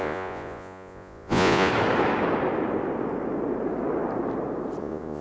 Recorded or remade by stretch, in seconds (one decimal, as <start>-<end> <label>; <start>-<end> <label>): 0.0-1.7 remade; 1.7-4.8 recorded; 4.8-5.2 remade